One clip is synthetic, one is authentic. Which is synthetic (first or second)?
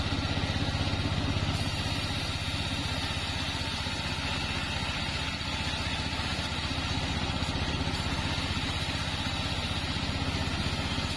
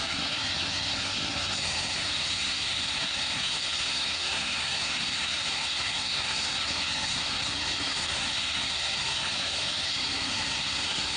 second